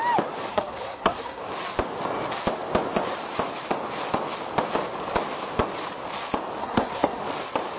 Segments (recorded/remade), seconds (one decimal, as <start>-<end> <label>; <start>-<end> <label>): 0.0-0.5 recorded; 0.5-1.4 remade; 1.4-6.6 recorded; 6.6-7.2 remade; 7.2-7.8 recorded

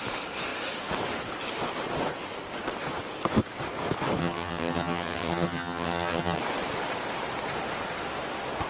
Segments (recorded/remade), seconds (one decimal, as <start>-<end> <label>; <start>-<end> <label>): 0.0-4.2 recorded; 4.2-6.4 remade; 6.4-8.7 recorded

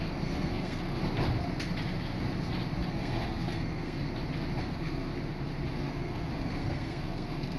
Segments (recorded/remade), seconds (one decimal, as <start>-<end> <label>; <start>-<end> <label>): 0.0-1.0 remade; 1.0-2.9 recorded; 2.9-4.1 remade; 4.1-4.6 recorded; 4.6-5.1 remade; 5.1-5.7 recorded; 5.7-7.6 remade

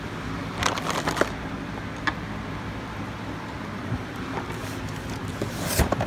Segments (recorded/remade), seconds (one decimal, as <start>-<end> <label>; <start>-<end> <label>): 0.0-0.4 remade; 0.4-2.5 recorded; 2.5-4.6 remade; 4.6-5.3 recorded; 5.3-6.1 remade

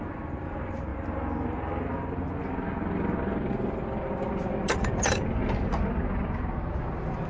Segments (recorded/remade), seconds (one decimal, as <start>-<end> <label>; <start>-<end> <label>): 0.0-0.9 remade; 0.9-4.2 recorded; 4.2-5.4 remade; 5.4-6.8 recorded; 6.8-7.3 remade

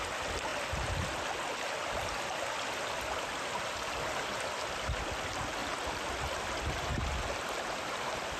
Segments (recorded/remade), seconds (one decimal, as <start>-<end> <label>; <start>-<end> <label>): 0.0-8.4 recorded